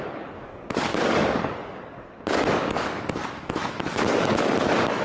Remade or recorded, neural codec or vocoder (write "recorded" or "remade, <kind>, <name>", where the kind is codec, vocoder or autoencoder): remade, codec, DAC